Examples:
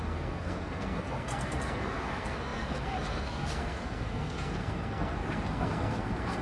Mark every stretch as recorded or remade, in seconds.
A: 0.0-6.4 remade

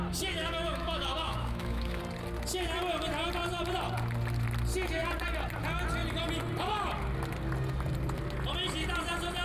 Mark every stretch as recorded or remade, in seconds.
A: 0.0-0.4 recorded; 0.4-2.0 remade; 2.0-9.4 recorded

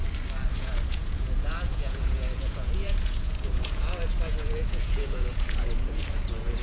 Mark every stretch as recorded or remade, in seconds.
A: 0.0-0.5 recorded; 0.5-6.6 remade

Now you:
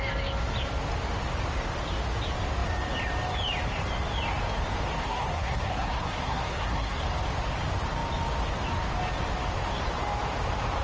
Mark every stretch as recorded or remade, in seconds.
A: 0.0-5.0 recorded; 5.0-7.0 remade; 7.0-10.8 recorded

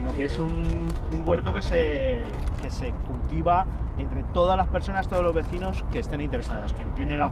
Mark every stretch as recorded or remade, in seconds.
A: 0.0-2.4 remade; 2.4-6.4 recorded; 6.4-7.3 remade

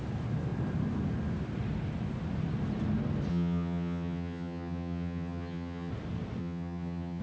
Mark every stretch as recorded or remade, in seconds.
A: 0.0-3.3 recorded; 3.3-5.9 remade; 5.9-6.4 recorded; 6.4-7.2 remade

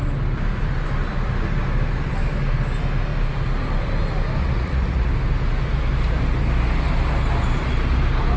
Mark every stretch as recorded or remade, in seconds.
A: 0.0-4.4 recorded; 4.4-5.1 remade; 5.1-8.4 recorded

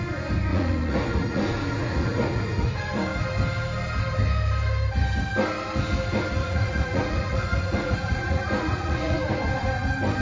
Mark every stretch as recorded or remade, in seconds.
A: 0.0-0.5 recorded; 0.5-2.7 remade; 2.7-6.4 recorded; 6.4-9.3 remade; 9.3-10.2 recorded